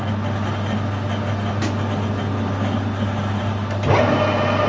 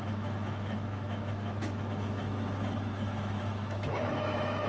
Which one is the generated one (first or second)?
second